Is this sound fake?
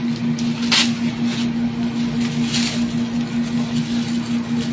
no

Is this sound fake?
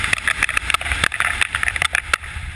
no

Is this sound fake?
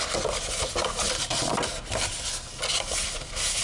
no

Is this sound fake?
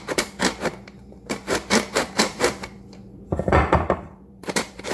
yes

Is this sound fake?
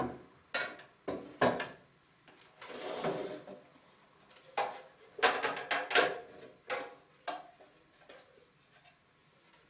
no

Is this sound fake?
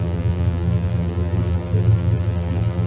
yes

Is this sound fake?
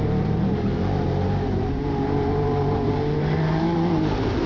yes